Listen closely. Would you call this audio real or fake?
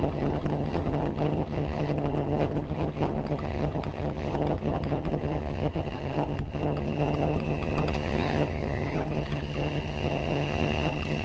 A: fake